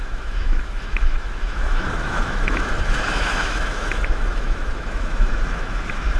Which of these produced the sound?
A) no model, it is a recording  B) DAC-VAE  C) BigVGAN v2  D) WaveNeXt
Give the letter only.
B